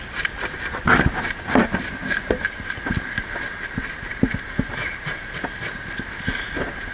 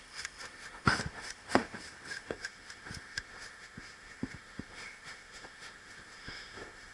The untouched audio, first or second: first